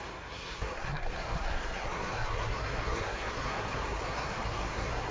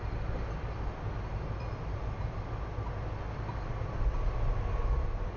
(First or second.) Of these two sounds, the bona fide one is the second